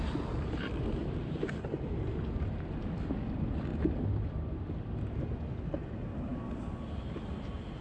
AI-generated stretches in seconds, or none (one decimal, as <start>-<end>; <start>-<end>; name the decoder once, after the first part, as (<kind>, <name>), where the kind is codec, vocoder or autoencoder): 1.0-1.5 (vocoder, BigVGAN v2)